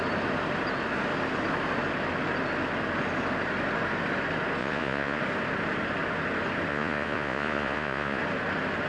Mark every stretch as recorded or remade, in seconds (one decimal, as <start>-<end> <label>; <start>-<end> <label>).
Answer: 0.0-4.6 recorded; 4.6-5.2 remade; 5.2-6.7 recorded; 6.7-8.2 remade; 8.2-8.9 recorded